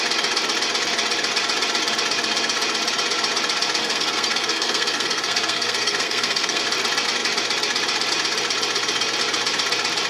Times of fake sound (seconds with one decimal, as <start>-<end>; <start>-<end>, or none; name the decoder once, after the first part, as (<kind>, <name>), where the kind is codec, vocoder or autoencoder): 3.8-6.6 (codec, SNAC)